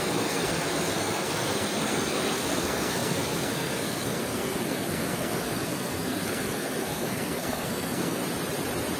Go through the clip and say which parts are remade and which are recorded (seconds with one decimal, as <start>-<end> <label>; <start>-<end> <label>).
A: 0.0-8.2 remade; 8.2-9.0 recorded